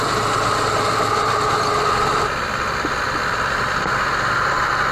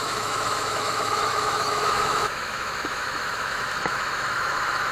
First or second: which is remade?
second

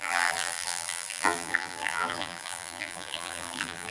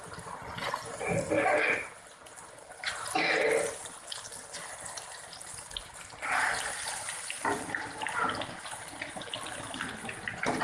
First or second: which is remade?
first